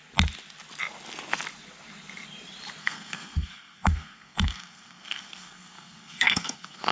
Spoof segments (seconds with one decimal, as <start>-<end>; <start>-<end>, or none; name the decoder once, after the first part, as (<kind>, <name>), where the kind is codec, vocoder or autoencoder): 2.8-6.9 (codec, SNAC)